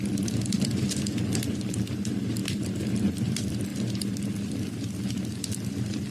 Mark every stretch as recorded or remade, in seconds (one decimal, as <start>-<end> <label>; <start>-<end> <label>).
0.0-6.1 remade